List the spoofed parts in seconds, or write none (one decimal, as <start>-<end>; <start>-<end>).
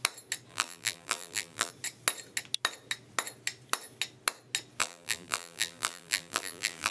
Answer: 0.5-1.7; 4.8-6.9